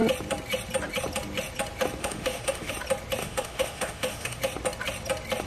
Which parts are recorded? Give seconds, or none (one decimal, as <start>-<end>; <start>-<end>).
0.0-2.0; 2.7-3.2; 4.4-5.5